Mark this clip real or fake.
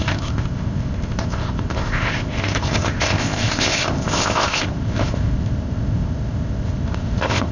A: fake